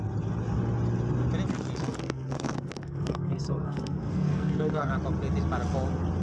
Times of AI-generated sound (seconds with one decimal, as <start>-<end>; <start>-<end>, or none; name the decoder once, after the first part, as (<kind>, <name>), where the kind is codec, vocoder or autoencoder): 1.8-4.9 (codec, SNAC)